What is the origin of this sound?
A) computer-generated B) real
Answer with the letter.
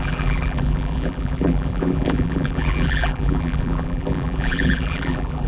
A